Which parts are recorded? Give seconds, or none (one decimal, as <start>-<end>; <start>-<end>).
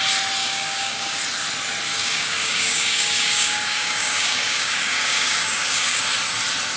0.0-0.4; 1.2-1.9; 6.0-6.8